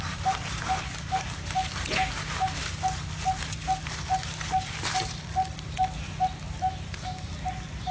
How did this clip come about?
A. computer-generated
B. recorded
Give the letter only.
B